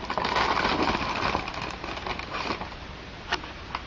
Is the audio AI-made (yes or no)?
no